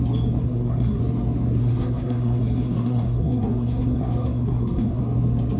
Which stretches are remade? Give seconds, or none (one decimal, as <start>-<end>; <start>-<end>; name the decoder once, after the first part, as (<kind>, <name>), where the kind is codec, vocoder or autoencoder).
0.4-1.0 (codec, SNAC); 1.6-5.0